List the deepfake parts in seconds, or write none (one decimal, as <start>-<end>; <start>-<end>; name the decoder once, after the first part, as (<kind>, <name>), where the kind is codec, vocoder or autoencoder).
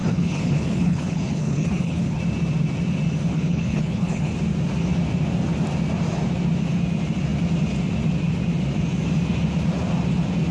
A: 0.0-2.2 (codec, HILCodec); 3.3-4.3